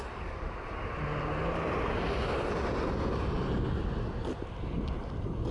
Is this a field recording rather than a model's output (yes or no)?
yes